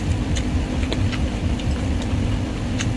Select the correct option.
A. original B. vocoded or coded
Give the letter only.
A